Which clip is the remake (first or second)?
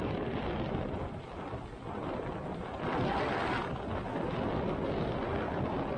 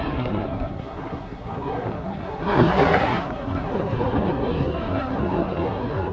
second